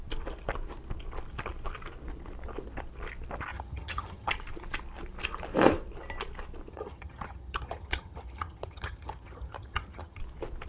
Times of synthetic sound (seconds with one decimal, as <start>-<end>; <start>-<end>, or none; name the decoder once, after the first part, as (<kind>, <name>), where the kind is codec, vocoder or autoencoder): 3.5-4.3 (vocoder, HiFi-GAN); 6.7-10.2